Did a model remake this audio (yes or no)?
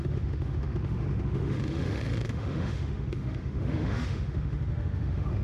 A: yes